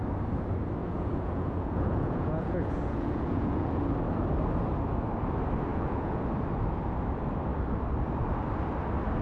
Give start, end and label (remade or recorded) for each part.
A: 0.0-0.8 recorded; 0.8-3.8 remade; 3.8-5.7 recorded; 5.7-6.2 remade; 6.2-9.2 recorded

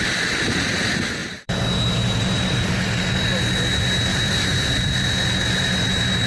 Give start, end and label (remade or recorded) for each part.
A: 0.0-1.2 recorded; 1.2-3.1 remade; 3.1-4.1 recorded; 4.1-4.7 remade; 4.7-6.3 recorded

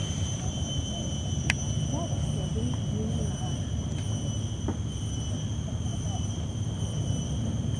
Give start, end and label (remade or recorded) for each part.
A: 0.0-1.4 remade; 1.4-5.5 recorded; 5.5-6.4 remade; 6.4-7.8 recorded

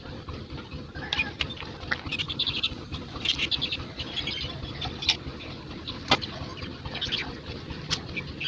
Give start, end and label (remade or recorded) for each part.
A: 0.0-2.1 recorded; 2.1-3.5 remade; 3.5-8.5 recorded

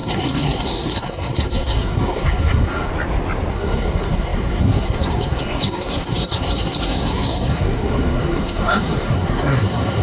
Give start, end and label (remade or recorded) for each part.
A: 0.0-2.9 remade; 2.9-3.5 recorded; 3.5-10.0 remade

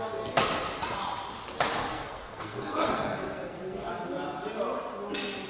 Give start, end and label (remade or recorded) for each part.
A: 0.0-1.9 recorded; 1.9-3.9 remade; 3.9-5.5 recorded

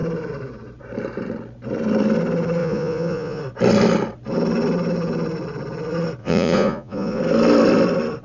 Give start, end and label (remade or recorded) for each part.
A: 0.0-2.6 recorded; 2.6-3.4 remade; 3.4-6.2 recorded; 6.2-7.2 remade; 7.2-8.2 recorded

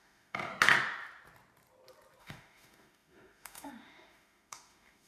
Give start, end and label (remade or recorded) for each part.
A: 0.0-0.5 remade; 0.5-2.2 recorded; 2.2-5.1 remade